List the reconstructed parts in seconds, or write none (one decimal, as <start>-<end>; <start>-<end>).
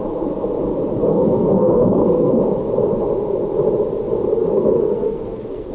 1.1-2.5; 4.4-5.7